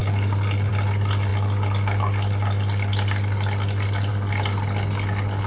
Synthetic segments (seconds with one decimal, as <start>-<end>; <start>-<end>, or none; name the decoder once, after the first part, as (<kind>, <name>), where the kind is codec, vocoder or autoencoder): none